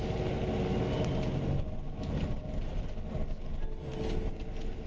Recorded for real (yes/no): yes